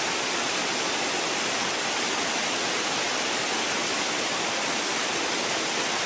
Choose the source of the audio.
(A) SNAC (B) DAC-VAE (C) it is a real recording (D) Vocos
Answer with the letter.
C